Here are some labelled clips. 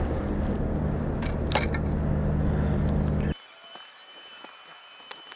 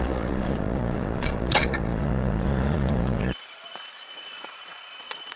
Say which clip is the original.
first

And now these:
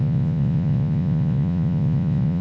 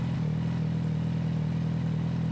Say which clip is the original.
second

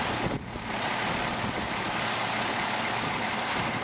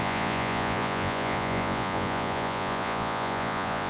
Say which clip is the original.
first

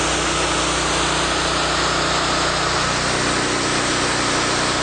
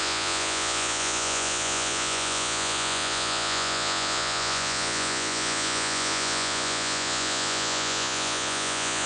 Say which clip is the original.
first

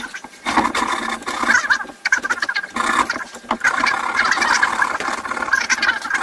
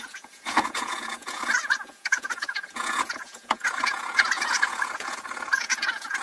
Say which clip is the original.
first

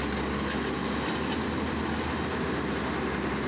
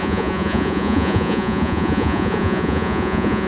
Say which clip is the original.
first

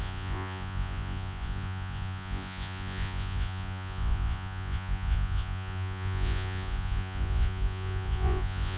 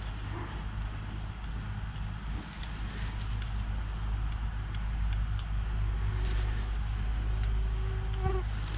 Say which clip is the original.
second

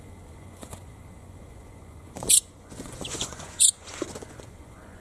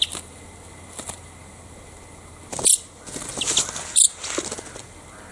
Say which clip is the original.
second